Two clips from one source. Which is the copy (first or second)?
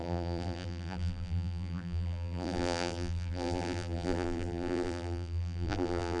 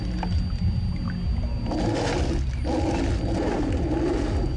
first